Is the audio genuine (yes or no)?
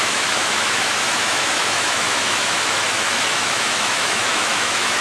no